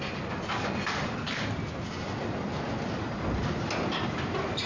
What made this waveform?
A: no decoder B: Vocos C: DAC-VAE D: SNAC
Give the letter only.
A